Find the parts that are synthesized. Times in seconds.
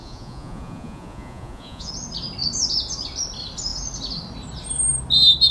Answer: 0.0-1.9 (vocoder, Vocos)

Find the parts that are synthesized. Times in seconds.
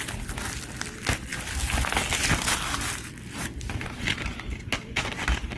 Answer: none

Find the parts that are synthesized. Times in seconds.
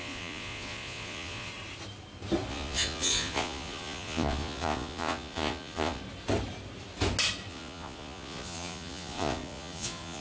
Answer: 0.0-1.5 (vocoder, Vocos); 2.5-6.0; 7.5-10.2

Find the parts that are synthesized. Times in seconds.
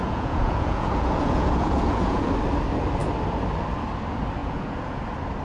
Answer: 0.0-2.3 (vocoder, Vocos); 4.4-5.0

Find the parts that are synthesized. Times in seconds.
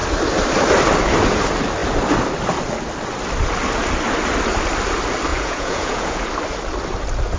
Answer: 5.3-6.2 (vocoder, Vocos)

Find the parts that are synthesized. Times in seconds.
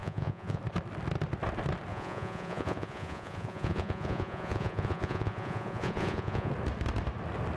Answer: 0.0-0.6 (vocoder, Vocos); 1.9-6.5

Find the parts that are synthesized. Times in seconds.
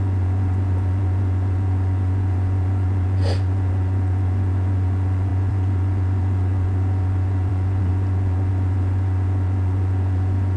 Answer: 0.0-10.6 (vocoder, Vocos)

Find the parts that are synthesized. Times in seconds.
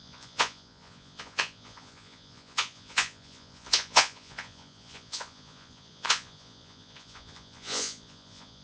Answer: 0.0-8.6 (vocoder, Vocos)